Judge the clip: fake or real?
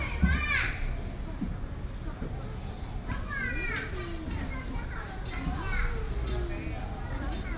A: real